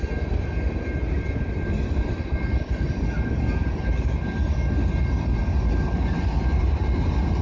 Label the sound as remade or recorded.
recorded